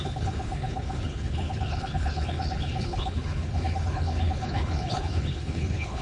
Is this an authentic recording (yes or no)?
no